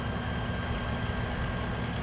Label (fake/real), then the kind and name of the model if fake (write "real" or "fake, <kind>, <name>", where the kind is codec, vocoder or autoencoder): real